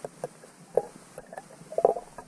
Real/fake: real